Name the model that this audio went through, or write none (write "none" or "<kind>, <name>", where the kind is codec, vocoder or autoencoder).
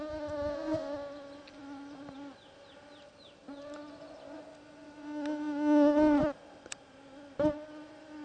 none